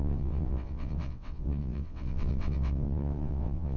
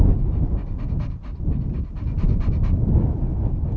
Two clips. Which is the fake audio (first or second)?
first